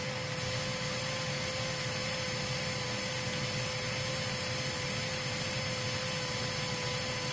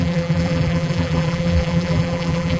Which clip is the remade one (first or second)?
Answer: second